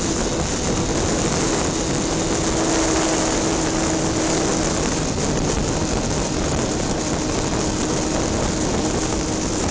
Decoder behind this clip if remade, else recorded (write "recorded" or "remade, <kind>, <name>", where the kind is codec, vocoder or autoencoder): recorded